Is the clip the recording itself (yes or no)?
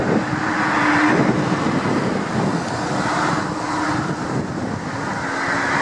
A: yes